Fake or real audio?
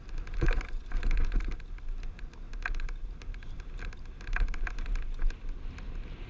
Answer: real